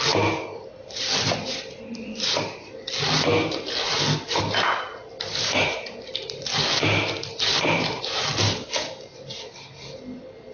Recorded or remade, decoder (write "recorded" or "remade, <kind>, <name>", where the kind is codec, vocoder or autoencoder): recorded